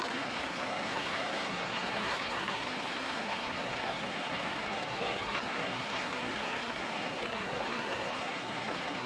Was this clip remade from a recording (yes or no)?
yes